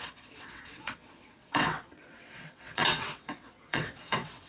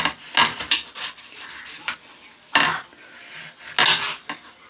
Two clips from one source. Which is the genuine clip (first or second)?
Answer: second